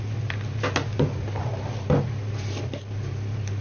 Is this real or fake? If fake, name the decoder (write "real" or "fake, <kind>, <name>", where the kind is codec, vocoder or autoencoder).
real